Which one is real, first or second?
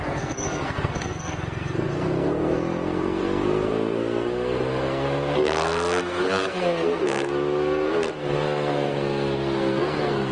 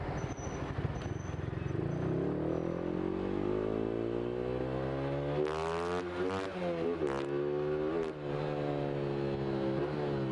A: second